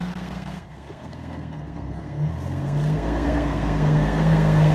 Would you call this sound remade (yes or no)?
yes